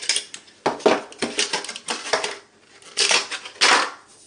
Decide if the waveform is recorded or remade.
recorded